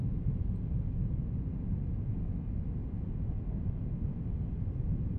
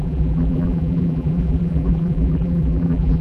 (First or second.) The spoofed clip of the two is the second